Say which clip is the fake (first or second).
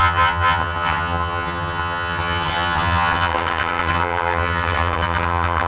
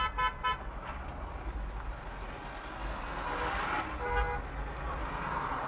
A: first